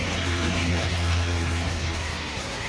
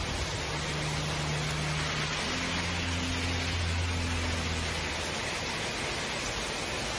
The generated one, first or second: first